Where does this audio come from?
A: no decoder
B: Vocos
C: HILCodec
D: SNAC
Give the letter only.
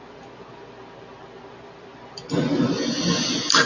A